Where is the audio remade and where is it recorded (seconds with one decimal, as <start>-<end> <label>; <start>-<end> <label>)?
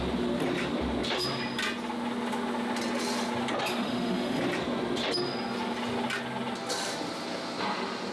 0.0-3.7 recorded; 3.7-4.4 remade; 4.4-8.1 recorded